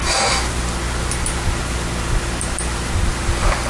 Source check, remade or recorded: recorded